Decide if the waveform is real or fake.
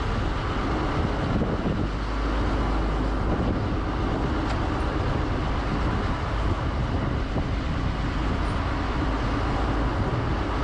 real